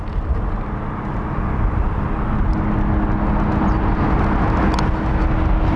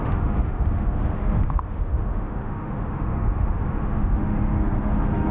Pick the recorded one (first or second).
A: first